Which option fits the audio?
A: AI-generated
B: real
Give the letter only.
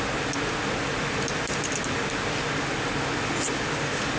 B